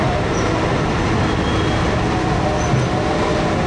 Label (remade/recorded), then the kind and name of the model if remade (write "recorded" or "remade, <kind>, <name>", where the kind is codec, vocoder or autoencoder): recorded